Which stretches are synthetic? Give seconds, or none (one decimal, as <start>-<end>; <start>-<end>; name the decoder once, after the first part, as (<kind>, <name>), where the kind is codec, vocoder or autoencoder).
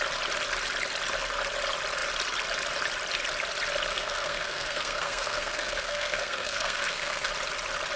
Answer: 3.9-7.3 (codec, SNAC)